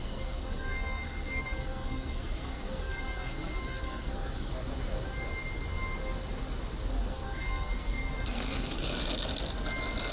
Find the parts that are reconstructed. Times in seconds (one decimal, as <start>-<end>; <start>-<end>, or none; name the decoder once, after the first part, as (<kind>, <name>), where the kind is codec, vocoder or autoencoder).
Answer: 0.0-4.5 (codec, SNAC); 7.0-9.0